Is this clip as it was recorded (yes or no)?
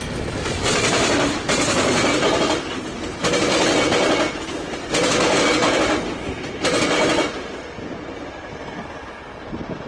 yes